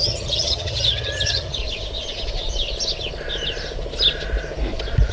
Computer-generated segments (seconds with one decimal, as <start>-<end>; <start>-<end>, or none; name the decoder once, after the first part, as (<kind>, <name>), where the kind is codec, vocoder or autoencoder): 0.0-1.6 (vocoder, HiFi-GAN)